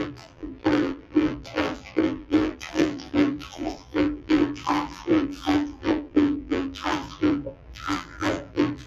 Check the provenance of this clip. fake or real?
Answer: fake